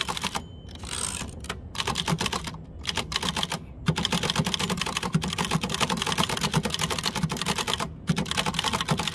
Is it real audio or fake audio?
real